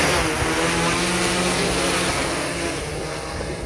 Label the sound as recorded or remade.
recorded